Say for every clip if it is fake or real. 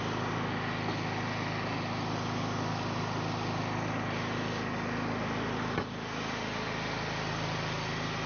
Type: real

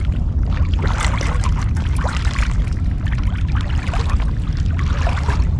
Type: real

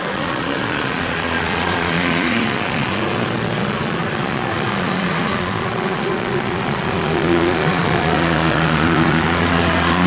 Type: fake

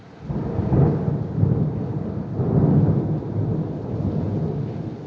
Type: real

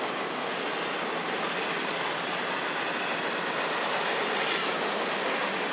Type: real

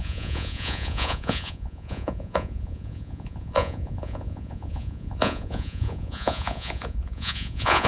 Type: fake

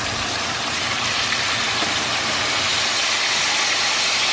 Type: real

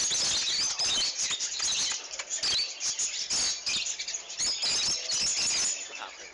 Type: real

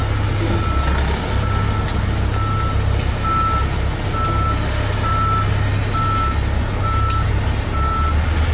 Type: real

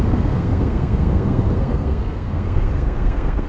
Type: fake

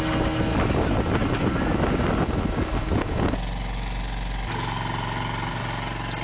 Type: real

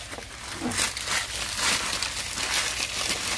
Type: real